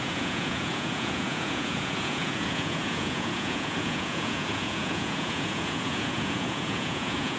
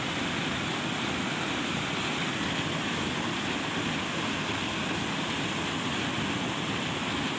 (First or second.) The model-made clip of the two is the first